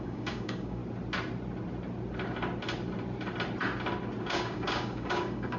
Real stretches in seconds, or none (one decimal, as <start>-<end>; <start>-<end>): 0.8-4.2